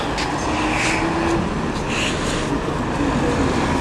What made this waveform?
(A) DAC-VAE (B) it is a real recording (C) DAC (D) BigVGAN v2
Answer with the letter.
B